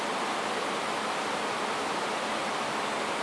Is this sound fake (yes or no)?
no